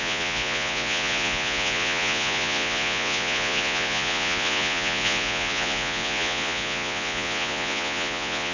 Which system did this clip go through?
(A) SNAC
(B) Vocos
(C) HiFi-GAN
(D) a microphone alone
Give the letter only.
B